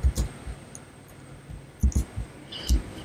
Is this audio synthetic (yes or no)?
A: no